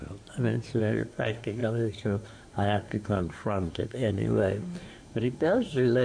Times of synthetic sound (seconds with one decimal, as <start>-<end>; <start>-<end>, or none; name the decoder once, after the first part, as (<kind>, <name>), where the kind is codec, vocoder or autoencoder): 0.8-6.0 (codec, SNAC)